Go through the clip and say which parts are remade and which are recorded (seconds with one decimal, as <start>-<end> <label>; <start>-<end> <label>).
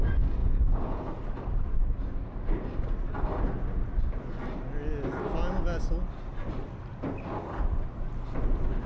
0.0-0.4 recorded; 0.4-1.1 remade; 1.1-8.9 recorded